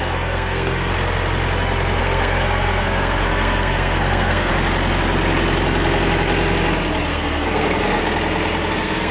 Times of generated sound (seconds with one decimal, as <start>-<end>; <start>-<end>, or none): 0.0-0.9; 2.0-4.5; 7.1-8.0; 8.7-9.1